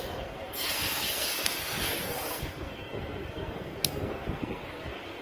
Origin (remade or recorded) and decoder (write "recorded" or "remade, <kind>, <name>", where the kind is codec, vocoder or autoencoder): remade, codec, SNAC